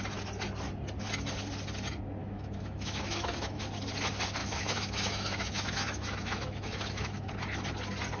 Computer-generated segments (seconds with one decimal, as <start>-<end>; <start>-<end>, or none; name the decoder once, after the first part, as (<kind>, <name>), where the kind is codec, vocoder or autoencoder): 2.2-3.6 (autoencoder, DAC-VAE); 4.4-7.3